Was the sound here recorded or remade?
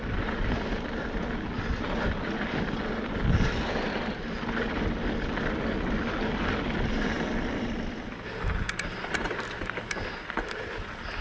recorded